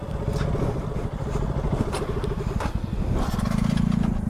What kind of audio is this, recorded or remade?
recorded